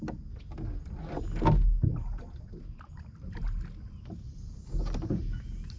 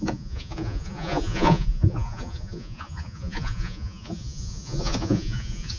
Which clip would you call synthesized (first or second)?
second